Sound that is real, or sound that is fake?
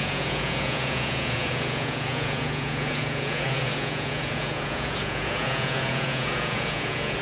fake